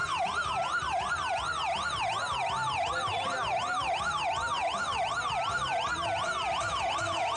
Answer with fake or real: real